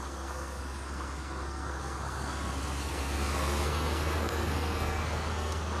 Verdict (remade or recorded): remade